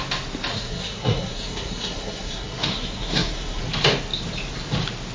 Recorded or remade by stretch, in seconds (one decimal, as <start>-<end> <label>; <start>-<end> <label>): 0.0-0.5 recorded; 0.5-3.6 remade; 3.6-5.1 recorded